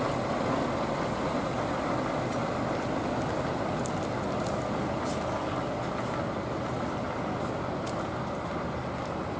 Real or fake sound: real